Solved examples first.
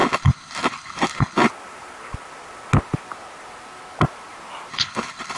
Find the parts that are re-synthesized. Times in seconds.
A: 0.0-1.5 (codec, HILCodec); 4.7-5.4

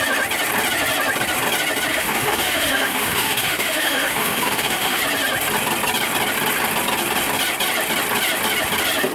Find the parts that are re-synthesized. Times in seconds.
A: 1.9-5.0 (autoencoder, DAC-VAE)

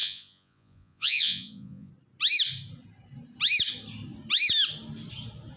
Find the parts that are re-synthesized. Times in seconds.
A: 0.0-1.9 (vocoder, Vocos)